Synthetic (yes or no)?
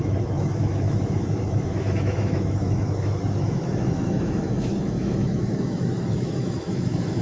yes